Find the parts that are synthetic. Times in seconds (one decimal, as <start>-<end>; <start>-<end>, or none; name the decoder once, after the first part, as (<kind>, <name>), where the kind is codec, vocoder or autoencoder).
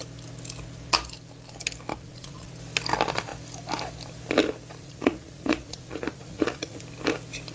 1.9-2.5 (vocoder, Vocos); 4.8-6.8